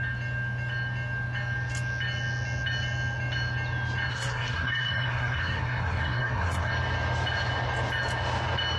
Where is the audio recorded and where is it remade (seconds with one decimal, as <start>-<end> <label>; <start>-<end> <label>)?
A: 0.0-4.1 recorded; 4.1-6.7 remade; 6.7-8.8 recorded